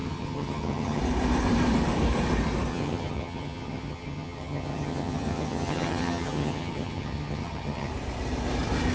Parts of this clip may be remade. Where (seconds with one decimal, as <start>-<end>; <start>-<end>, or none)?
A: 0.0-1.0; 2.7-7.9